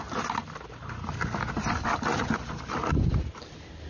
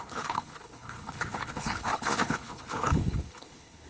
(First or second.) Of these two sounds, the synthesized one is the second